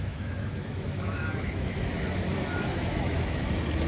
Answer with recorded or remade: remade